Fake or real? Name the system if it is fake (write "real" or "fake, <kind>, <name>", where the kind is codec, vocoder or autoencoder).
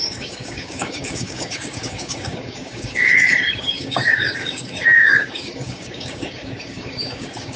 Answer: fake, codec, DAC